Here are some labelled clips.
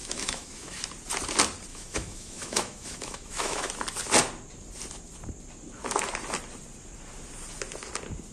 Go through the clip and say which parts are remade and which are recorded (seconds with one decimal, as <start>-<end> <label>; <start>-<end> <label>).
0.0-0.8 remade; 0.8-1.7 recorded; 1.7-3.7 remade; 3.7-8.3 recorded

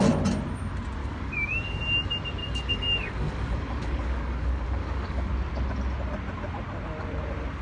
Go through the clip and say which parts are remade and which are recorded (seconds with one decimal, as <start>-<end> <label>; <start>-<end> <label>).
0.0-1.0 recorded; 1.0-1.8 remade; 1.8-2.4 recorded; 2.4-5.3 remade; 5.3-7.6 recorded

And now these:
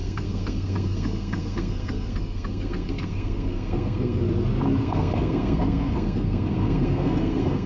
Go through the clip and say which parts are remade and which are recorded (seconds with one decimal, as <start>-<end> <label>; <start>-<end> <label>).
0.0-4.2 remade; 4.2-4.8 recorded; 4.8-7.7 remade

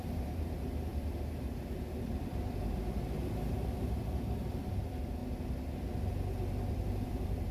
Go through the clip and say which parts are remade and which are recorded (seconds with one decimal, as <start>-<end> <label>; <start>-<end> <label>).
0.0-5.2 remade; 5.2-6.7 recorded; 6.7-7.5 remade

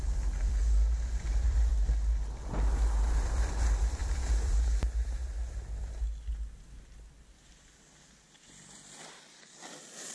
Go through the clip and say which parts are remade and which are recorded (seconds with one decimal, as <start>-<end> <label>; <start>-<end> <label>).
0.0-10.1 recorded

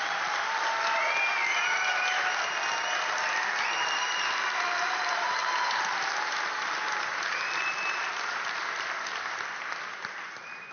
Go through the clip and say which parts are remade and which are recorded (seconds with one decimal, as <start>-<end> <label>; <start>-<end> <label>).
0.0-10.7 recorded

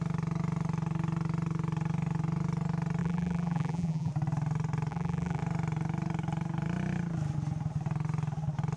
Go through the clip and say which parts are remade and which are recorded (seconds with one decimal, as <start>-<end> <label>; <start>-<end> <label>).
0.0-3.0 recorded; 3.0-4.1 remade; 4.1-4.9 recorded; 4.9-5.4 remade; 5.4-8.8 recorded

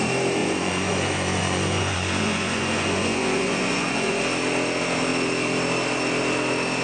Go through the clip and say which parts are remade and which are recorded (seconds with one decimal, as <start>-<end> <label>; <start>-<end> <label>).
0.0-0.4 recorded; 0.4-4.2 remade; 4.2-6.8 recorded